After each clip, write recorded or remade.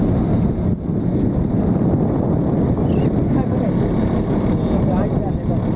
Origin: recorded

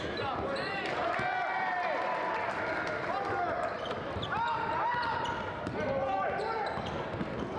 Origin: recorded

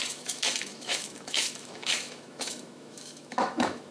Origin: remade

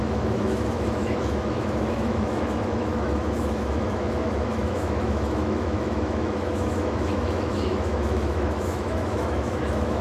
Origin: remade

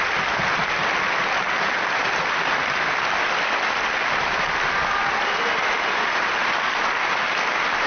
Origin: recorded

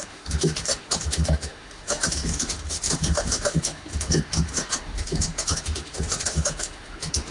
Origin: remade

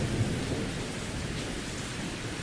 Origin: recorded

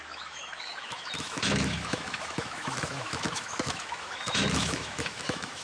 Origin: remade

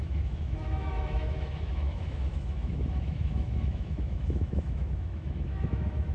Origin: remade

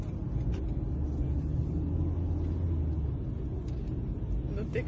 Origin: recorded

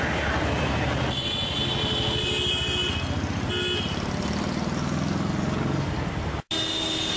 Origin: recorded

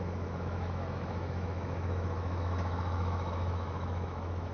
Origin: remade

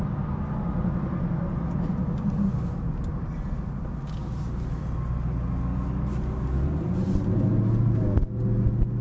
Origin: recorded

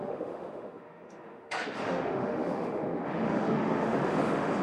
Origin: remade